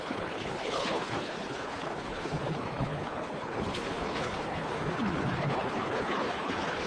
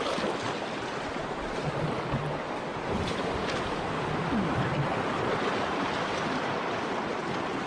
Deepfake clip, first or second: first